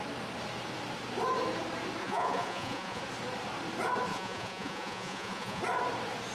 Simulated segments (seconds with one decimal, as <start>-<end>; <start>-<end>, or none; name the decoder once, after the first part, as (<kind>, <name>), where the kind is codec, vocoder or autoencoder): 2.0-3.0 (vocoder, Vocos); 4.1-5.6